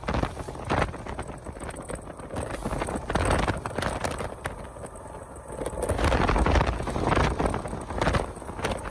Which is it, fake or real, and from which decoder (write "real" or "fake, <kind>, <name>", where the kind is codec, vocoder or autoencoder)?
real